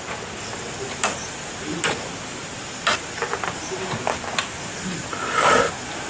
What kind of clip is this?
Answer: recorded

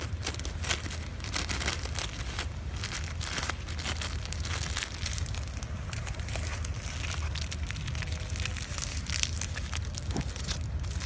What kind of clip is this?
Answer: recorded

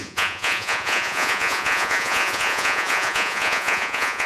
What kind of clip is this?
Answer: remade